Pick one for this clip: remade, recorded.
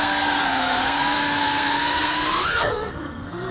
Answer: remade